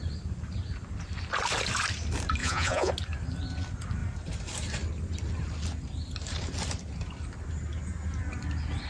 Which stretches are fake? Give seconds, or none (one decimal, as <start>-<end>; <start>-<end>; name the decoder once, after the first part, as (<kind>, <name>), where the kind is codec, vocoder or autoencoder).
2.4-2.9 (vocoder, Vocos)